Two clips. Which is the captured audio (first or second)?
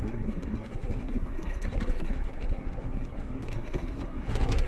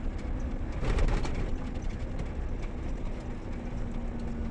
second